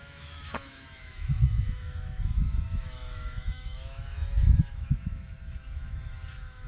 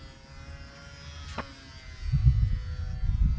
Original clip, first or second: second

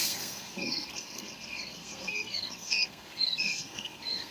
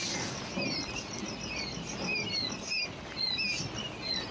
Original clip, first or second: second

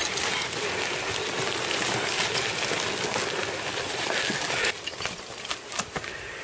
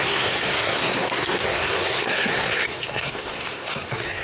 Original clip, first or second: first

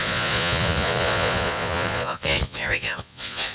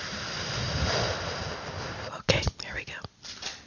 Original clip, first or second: second